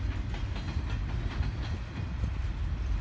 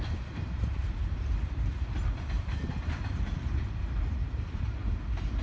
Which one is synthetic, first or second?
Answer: second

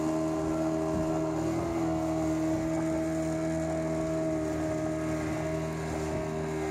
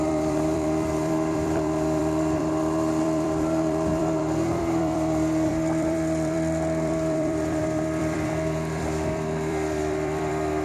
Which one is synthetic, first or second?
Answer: second